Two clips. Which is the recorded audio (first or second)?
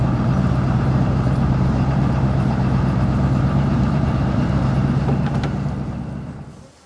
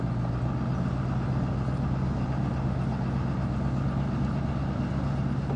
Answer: second